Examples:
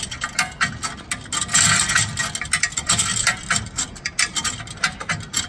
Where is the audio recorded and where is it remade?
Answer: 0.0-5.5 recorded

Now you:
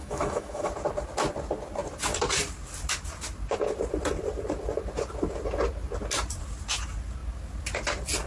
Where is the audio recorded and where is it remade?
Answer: 0.0-0.7 remade; 0.7-8.3 recorded